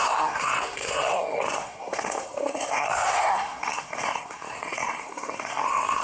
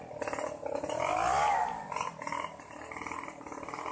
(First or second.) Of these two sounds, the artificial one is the first